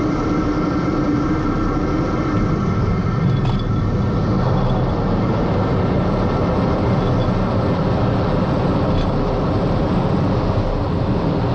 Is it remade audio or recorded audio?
recorded